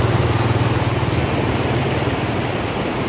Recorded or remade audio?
recorded